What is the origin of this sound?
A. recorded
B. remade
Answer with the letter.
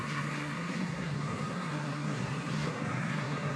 B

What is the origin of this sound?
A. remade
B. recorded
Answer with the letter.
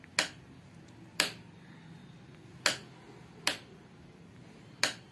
B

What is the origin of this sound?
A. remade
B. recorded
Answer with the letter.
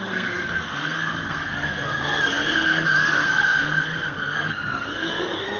A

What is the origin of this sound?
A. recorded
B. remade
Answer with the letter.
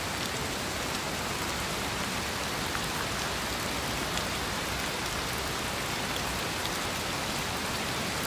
A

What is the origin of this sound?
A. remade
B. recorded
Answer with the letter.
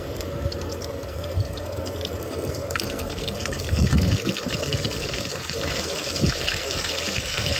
A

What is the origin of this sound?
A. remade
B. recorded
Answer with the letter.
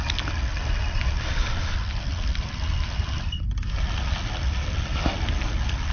B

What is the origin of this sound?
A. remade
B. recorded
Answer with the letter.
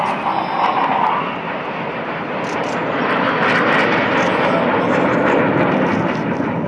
B